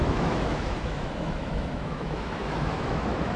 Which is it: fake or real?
fake